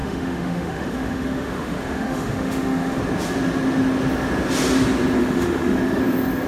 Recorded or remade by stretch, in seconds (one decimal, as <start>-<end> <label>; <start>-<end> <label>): 0.0-3.0 remade; 3.0-5.2 recorded; 5.2-6.0 remade; 6.0-6.5 recorded